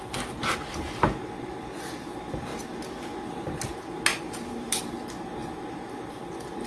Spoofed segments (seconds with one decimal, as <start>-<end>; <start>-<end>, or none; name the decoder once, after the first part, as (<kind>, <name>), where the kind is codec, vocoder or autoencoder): 4.1-4.8 (vocoder, BigVGAN v2)

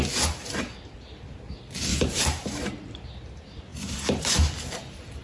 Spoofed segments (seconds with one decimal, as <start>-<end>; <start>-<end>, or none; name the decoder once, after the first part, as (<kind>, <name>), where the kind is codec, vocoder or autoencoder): 1.9-2.7 (vocoder, BigVGAN v2); 3.7-4.5

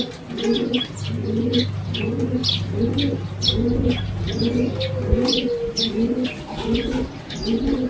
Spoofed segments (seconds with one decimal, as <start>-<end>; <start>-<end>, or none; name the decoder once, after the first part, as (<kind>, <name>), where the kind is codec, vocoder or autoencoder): none

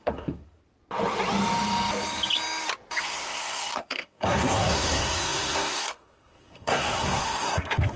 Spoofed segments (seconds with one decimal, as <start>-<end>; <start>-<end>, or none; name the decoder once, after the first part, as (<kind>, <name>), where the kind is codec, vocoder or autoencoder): 0.0-0.6 (codec, SNAC); 3.0-8.0

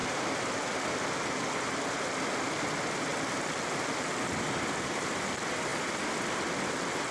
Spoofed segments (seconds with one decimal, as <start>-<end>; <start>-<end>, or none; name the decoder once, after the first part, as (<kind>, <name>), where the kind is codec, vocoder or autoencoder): 5.7-6.2 (vocoder, BigVGAN v2)

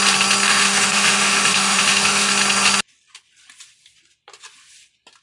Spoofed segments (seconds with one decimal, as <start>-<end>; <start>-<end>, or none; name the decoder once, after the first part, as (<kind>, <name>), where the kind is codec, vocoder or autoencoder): 0.5-2.3 (autoencoder, DAC-VAE)

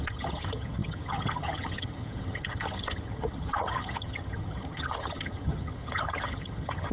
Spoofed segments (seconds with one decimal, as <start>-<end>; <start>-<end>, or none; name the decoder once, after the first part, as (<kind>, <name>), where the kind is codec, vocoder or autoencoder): 0.0-6.9 (vocoder, HiFi-GAN)